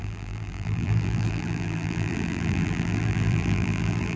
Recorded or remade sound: remade